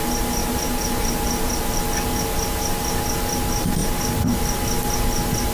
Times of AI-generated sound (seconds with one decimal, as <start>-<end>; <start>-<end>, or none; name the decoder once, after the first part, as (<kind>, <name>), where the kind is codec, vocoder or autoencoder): 0.4-1.8 (vocoder, BigVGAN v2); 3.8-4.4